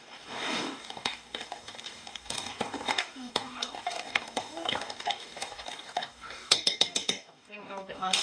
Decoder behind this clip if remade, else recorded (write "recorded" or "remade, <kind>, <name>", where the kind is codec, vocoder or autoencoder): remade, codec, DAC